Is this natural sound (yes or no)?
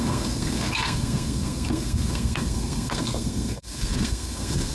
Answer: no